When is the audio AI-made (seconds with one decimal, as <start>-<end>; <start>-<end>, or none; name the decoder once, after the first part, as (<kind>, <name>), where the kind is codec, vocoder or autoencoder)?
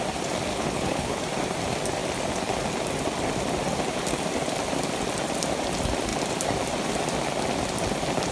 0.5-1.2 (codec, HILCodec)